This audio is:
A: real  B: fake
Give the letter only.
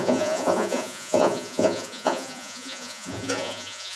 B